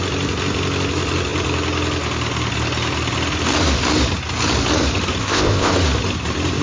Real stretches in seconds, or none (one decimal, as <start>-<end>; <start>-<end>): 0.0-5.2; 5.7-6.6